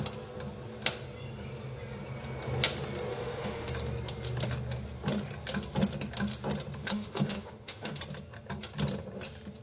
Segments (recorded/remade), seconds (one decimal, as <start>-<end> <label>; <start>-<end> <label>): 0.0-3.1 recorded; 3.1-3.7 remade; 3.7-6.8 recorded; 6.8-8.0 remade; 8.0-9.6 recorded